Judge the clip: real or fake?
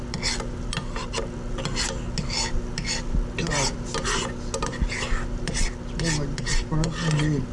real